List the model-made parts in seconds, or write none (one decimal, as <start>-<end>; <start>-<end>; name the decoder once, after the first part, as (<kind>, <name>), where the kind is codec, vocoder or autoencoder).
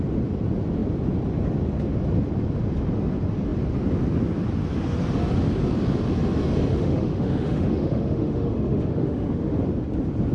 6.7-9.6 (autoencoder, DAC-VAE)